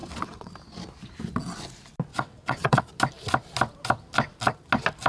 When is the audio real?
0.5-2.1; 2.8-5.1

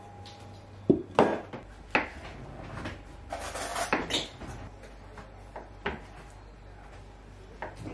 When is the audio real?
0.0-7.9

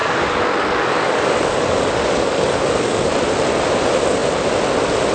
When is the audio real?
3.1-5.1

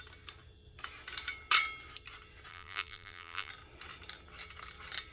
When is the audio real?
0.0-2.5; 3.5-5.1

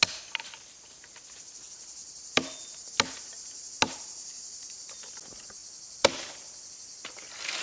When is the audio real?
0.0-2.0; 2.9-5.6; 6.7-7.6